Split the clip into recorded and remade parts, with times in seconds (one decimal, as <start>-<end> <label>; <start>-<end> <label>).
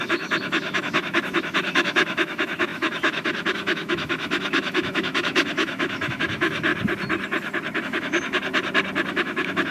0.0-6.7 remade; 6.7-7.8 recorded; 7.8-8.4 remade; 8.4-9.1 recorded; 9.1-9.7 remade